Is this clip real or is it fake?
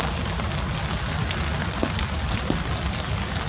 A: real